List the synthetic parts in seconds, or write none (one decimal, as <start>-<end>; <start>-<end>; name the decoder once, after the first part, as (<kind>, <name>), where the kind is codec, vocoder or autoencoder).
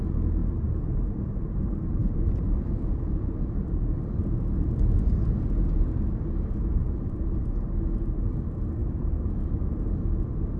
0.4-4.1 (vocoder, BigVGAN v2); 6.8-7.5; 8.8-10.1